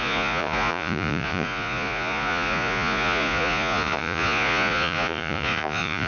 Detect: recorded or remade remade